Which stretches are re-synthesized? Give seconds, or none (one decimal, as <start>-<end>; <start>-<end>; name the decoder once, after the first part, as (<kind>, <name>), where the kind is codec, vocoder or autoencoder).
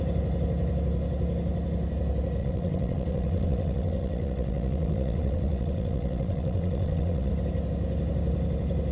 2.4-7.3 (vocoder, WaveNeXt)